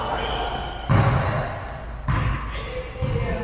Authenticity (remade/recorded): recorded